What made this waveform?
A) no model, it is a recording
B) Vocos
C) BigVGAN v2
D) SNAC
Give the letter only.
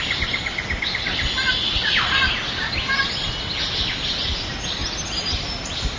A